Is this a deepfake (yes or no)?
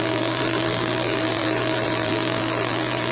yes